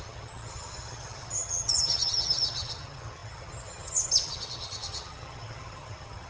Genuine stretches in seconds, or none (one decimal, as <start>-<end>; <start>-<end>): none